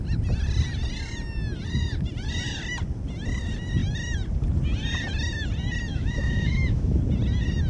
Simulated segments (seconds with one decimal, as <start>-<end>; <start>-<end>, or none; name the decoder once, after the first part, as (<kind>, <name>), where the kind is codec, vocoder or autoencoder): 5.9-7.0 (autoencoder, DAC-VAE)